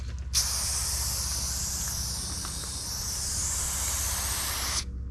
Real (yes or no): yes